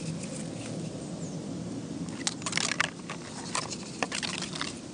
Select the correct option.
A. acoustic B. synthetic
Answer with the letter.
A